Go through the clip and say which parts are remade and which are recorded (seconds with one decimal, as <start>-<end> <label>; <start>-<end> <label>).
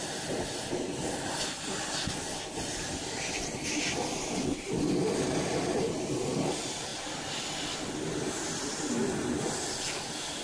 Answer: 0.0-10.4 recorded